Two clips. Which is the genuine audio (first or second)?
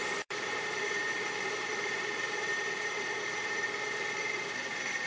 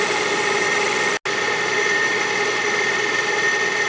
second